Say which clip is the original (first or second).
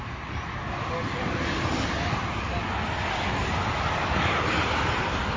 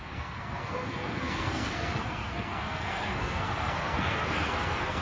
first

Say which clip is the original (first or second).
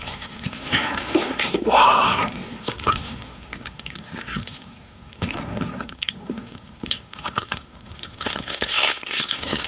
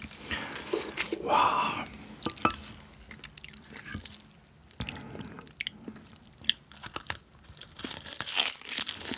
second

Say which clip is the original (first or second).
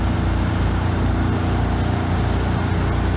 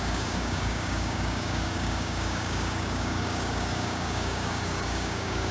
first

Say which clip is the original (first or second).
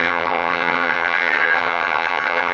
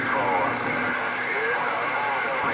second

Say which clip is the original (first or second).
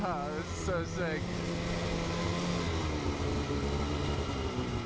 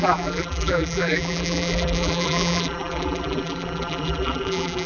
first